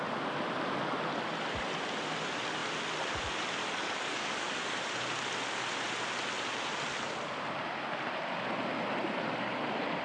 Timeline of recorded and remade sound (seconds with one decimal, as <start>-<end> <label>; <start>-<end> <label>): 0.0-3.6 recorded; 3.6-4.6 remade; 4.6-10.0 recorded